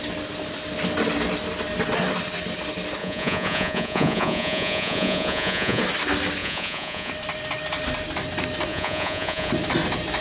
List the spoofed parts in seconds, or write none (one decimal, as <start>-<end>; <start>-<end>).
3.0-5.8; 6.4-7.1; 8.7-9.5